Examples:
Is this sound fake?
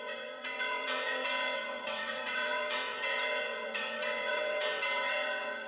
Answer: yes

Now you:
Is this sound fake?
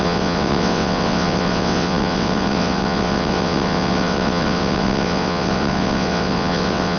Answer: yes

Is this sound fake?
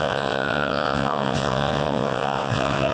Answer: yes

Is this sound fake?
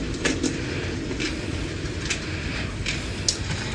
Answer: no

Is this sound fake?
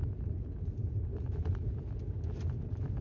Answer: no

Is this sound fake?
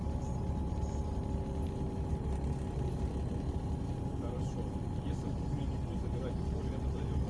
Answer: no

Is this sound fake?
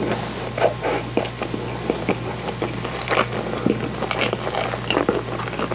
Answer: no